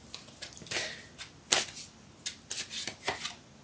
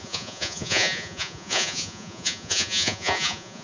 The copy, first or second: second